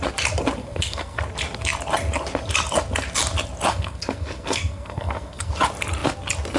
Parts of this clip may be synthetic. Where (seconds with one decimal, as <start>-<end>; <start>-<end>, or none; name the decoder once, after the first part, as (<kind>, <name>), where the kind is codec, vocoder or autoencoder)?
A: 0.6-1.2 (codec, SNAC); 3.7-5.5